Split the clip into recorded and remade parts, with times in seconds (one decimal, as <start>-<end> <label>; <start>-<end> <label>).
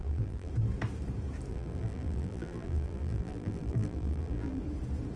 0.0-0.5 remade; 0.5-1.5 recorded; 1.5-4.6 remade; 4.6-5.2 recorded